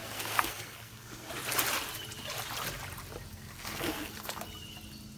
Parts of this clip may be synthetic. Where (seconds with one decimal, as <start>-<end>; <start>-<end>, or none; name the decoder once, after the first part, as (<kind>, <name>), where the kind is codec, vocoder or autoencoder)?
0.0-1.3 (codec, SNAC); 3.3-4.4